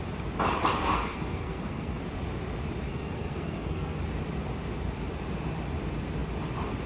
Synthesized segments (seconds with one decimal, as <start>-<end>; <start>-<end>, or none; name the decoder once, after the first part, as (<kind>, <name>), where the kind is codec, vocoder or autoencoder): 0.8-2.0 (codec, SNAC); 2.9-4.0